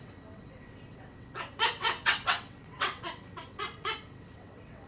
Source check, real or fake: fake